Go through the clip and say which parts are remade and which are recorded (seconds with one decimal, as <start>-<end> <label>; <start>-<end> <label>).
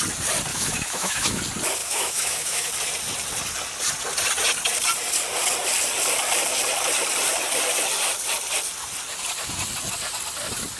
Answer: 0.0-0.5 recorded; 0.5-1.4 remade; 1.4-1.8 recorded; 1.8-2.7 remade; 2.7-10.8 recorded